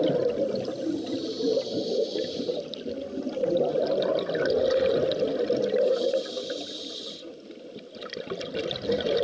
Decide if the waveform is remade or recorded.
recorded